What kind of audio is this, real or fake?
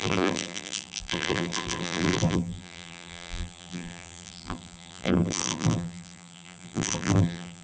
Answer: fake